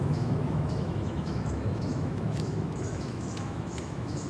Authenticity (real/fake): fake